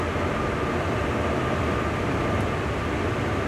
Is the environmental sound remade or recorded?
recorded